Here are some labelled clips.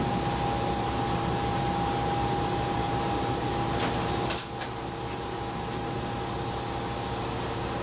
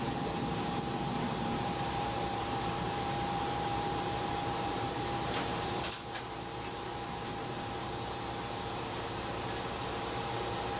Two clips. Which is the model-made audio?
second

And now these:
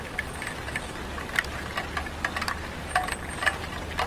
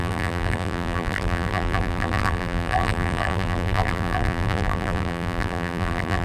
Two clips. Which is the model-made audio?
second